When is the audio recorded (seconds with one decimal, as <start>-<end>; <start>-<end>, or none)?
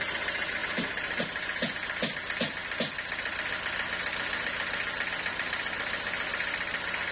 0.0-7.1